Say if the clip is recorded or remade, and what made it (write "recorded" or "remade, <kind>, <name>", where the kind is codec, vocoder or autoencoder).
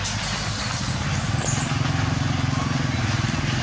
recorded